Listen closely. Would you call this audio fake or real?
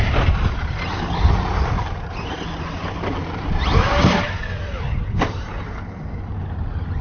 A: fake